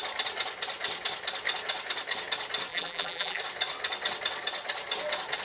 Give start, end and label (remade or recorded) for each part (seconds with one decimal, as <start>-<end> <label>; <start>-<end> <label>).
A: 0.0-2.7 recorded; 2.7-3.4 remade; 3.4-5.4 recorded